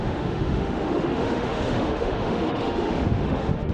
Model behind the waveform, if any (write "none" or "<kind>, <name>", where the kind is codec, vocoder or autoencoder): autoencoder, DAC-VAE